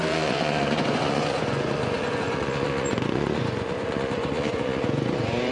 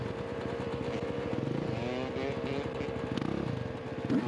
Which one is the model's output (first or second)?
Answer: first